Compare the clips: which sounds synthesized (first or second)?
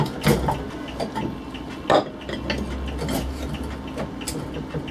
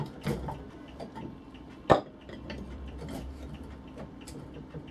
second